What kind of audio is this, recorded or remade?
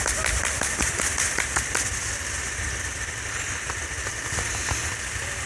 recorded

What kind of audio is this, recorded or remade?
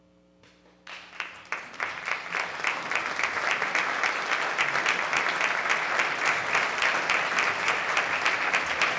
recorded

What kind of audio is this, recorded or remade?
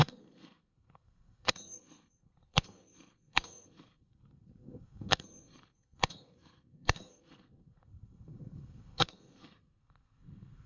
remade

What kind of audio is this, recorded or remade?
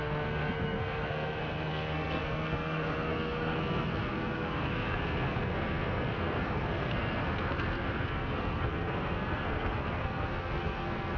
remade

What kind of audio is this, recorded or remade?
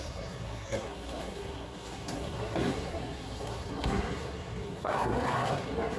remade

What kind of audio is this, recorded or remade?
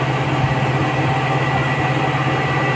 recorded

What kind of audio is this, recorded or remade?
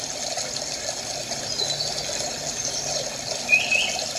recorded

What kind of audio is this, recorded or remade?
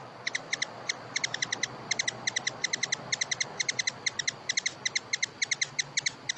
recorded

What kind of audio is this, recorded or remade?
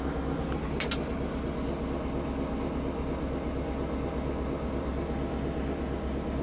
recorded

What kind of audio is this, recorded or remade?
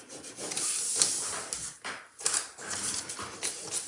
recorded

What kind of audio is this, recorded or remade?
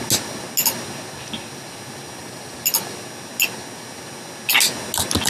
recorded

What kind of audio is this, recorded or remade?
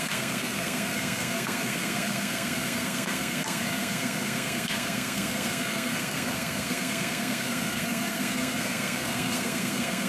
remade